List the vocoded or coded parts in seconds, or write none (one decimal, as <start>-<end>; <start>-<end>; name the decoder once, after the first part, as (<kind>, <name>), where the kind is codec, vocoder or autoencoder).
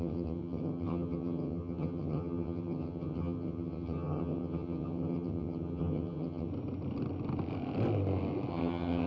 0.0-6.5 (vocoder, HiFi-GAN); 8.5-9.1